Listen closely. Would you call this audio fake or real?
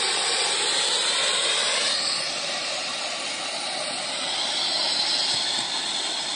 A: real